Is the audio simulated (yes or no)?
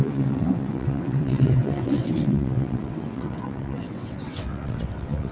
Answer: yes